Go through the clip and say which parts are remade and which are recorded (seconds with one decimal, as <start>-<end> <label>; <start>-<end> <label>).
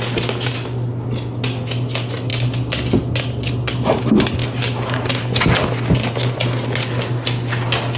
0.0-8.0 recorded